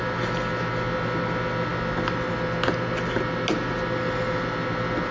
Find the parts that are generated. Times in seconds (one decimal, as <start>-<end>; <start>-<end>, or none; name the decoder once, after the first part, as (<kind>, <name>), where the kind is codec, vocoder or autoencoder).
none

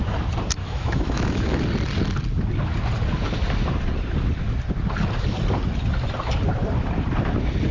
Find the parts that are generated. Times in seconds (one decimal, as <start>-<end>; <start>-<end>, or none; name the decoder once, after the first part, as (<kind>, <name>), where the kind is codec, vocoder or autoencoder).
0.6-1.6 (autoencoder, DAC-VAE)

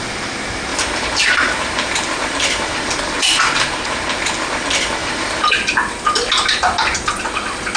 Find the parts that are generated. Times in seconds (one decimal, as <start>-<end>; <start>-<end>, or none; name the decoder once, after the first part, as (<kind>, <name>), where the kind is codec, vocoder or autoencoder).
0.7-3.8 (vocoder, BigVGAN v2); 5.0-5.5

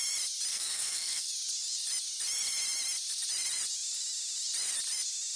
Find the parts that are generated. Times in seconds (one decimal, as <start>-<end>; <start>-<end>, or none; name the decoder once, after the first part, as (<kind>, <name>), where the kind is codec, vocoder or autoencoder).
0.5-1.3 (codec, SNAC)

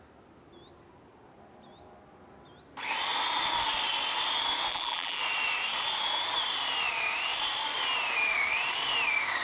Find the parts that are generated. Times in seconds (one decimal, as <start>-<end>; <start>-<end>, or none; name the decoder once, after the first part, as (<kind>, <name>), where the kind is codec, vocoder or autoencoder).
4.7-5.2 (vocoder, BigVGAN v2)

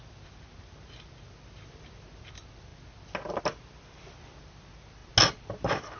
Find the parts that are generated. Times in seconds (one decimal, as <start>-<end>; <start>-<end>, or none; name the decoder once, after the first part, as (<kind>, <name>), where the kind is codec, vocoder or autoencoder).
none